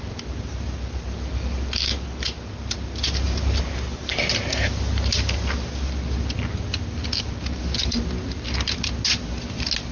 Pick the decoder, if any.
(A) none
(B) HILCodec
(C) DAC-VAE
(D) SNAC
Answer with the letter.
A